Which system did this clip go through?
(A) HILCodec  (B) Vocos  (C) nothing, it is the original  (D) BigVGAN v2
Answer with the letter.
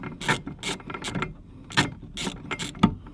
C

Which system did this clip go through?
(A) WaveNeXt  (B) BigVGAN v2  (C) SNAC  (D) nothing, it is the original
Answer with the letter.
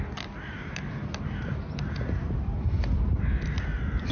D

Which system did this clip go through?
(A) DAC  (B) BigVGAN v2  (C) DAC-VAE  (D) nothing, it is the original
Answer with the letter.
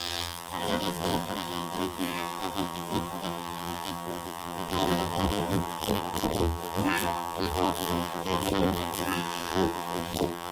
B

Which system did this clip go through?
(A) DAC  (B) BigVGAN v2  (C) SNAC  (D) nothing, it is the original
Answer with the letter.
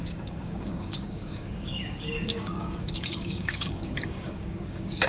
A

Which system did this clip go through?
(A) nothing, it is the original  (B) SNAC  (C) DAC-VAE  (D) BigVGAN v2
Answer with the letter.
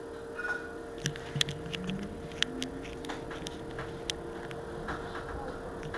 A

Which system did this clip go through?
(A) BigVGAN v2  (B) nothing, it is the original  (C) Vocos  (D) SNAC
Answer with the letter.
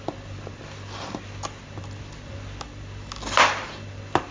B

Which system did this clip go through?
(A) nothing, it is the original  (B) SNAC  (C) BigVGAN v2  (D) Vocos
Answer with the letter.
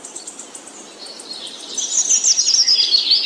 A